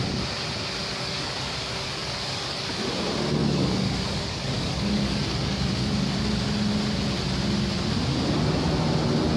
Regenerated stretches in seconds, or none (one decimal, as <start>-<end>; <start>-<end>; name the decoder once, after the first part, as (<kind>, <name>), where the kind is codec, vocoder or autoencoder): 0.9-2.7 (codec, DAC); 3.4-5.9